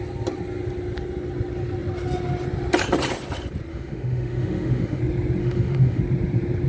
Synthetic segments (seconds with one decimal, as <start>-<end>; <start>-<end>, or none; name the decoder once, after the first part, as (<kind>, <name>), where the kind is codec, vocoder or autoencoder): 3.7-5.0 (autoencoder, DAC-VAE); 5.4-6.0